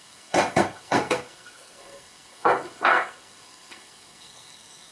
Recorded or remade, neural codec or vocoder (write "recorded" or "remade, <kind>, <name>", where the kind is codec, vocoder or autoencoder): remade, codec, SNAC